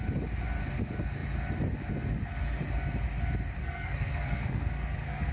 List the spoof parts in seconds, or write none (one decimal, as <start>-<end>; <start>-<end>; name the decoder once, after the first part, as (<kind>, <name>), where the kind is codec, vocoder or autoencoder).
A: 3.6-5.3 (codec, SNAC)

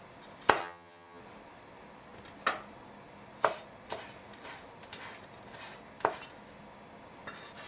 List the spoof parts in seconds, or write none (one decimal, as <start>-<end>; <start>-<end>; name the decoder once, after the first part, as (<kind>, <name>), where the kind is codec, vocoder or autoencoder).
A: 0.6-1.2 (vocoder, HiFi-GAN)

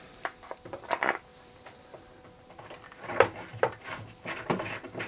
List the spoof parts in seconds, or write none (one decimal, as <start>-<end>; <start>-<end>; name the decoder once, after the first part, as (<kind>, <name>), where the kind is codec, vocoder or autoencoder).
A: 1.3-3.8 (vocoder, BigVGAN v2)

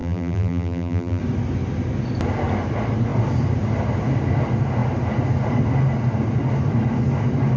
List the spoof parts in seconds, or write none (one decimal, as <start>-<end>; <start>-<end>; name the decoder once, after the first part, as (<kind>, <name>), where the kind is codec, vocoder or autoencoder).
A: 0.0-1.2 (vocoder, BigVGAN v2)

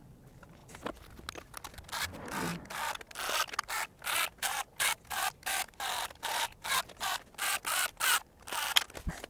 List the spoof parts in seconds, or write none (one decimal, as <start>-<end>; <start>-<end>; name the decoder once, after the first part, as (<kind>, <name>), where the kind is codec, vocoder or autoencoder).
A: none